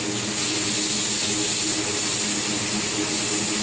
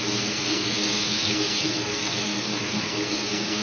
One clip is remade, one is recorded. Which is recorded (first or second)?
first